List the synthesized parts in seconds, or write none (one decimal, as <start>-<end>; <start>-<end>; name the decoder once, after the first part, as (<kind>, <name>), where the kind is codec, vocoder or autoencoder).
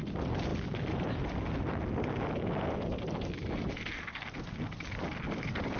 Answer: none